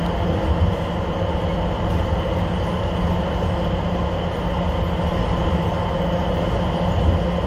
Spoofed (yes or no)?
no